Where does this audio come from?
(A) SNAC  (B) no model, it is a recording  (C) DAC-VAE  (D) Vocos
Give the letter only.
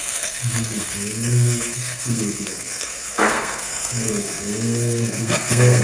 A